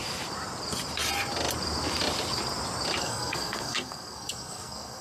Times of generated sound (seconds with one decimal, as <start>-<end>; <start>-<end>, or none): 3.0-5.0